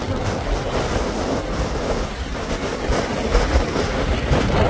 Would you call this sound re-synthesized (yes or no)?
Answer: no